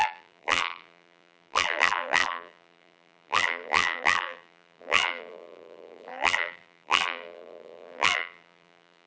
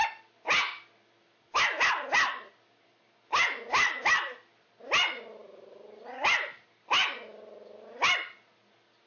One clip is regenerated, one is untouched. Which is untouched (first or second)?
second